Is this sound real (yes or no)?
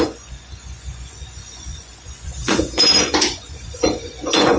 no